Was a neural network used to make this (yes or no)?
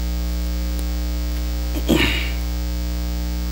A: no